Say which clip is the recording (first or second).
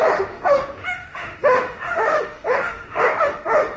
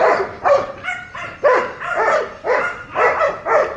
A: second